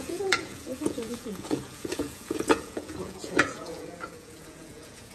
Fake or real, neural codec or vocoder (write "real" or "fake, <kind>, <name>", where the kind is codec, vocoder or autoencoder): fake, vocoder, Vocos